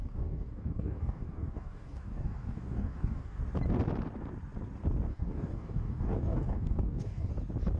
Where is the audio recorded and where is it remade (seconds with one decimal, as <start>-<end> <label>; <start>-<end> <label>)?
0.0-3.4 remade; 3.4-5.1 recorded; 5.1-7.3 remade; 7.3-7.8 recorded